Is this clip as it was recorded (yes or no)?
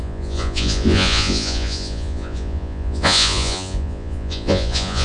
no